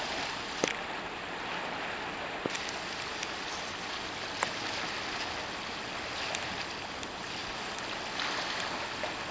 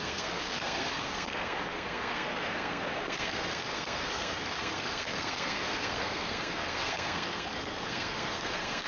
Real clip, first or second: first